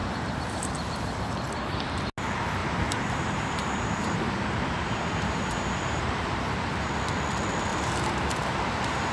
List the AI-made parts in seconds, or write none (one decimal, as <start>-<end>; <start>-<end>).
0.0-0.7; 2.6-6.9; 7.7-9.1

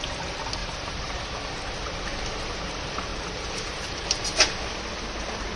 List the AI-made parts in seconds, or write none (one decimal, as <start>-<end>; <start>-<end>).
0.6-1.2; 3.1-4.0

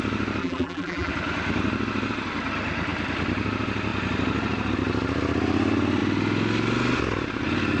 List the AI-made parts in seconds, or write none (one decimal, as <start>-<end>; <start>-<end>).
0.4-1.1